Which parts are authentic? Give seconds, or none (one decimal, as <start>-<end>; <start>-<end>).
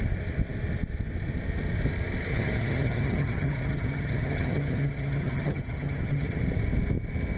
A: 0.0-2.3; 6.4-7.4